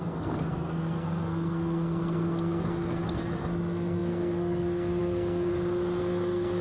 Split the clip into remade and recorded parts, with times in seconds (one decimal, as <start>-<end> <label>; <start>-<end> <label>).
0.0-5.5 remade; 5.5-6.0 recorded; 6.0-6.6 remade

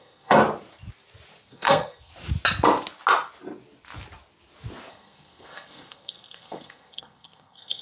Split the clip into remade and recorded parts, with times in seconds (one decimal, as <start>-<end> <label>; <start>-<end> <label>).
0.0-0.4 remade; 0.4-1.5 recorded; 1.5-2.1 remade; 2.1-4.9 recorded; 4.9-7.8 remade